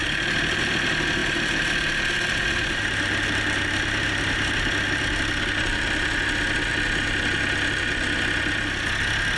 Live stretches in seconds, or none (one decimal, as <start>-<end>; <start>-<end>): 0.6-1.2; 4.7-9.4